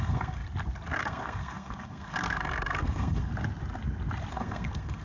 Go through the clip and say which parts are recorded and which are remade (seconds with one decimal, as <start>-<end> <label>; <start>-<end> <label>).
0.0-0.4 remade; 0.4-1.0 recorded; 1.0-3.3 remade; 3.3-4.3 recorded; 4.3-5.0 remade